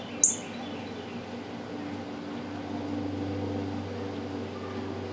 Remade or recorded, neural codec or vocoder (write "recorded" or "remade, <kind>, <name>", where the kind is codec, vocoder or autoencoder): recorded